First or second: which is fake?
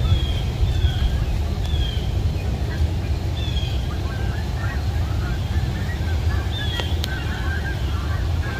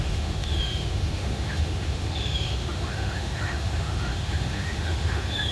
second